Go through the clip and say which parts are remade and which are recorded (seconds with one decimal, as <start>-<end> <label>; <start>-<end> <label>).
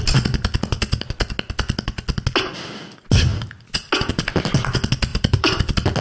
0.0-5.1 recorded; 5.1-5.6 remade; 5.6-6.0 recorded